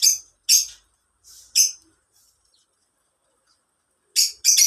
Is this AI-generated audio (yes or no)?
no